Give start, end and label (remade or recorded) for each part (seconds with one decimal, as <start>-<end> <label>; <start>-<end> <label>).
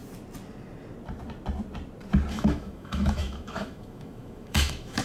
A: 0.0-2.3 recorded; 2.3-5.0 remade